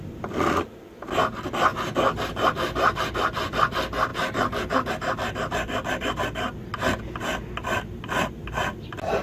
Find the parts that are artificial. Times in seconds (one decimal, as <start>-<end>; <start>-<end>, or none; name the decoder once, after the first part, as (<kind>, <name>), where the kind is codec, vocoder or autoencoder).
1.7-3.0 (vocoder, BigVGAN v2); 4.1-4.9